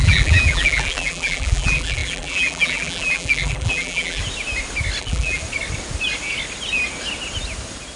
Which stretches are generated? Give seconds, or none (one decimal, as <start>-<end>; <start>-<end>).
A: 0.0-4.2; 5.0-5.4